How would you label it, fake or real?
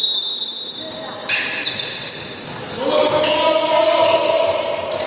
real